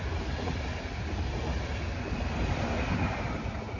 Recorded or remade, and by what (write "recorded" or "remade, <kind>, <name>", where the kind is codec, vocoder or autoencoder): recorded